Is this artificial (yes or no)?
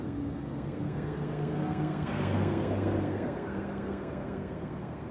yes